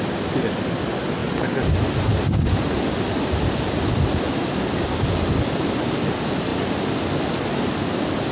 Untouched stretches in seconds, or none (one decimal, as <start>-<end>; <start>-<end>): 0.0-8.3